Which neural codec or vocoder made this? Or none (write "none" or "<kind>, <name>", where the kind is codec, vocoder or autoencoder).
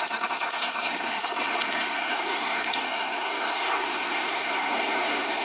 codec, SNAC